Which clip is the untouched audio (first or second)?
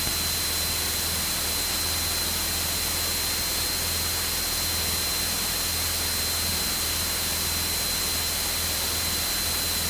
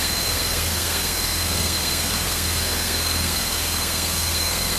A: first